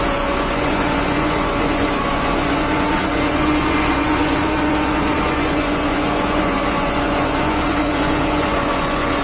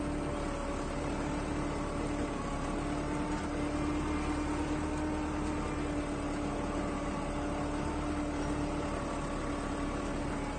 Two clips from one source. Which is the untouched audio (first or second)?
second